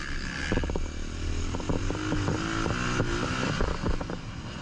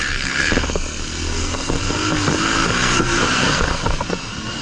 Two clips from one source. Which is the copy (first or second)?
second